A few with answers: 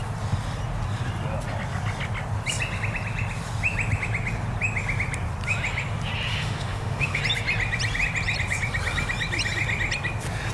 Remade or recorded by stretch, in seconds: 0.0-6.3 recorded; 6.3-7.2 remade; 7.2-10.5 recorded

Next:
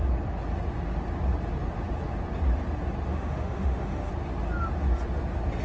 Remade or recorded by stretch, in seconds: 0.0-3.1 recorded; 3.1-4.1 remade; 4.1-5.6 recorded

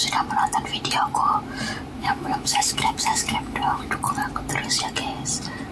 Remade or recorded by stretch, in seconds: 0.0-2.0 recorded; 2.0-3.9 remade; 3.9-5.7 recorded

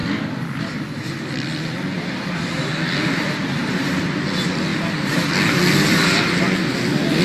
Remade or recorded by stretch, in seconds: 0.0-7.2 recorded

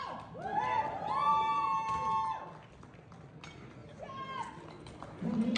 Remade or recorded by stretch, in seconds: 0.0-5.6 recorded